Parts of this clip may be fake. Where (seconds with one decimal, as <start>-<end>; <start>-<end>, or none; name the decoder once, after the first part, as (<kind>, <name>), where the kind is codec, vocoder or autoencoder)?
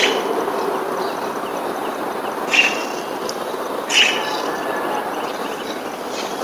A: 1.5-2.0 (vocoder, BigVGAN v2); 3.2-4.4; 5.3-5.8